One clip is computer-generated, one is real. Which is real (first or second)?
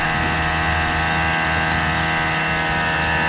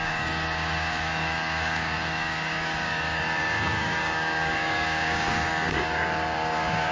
first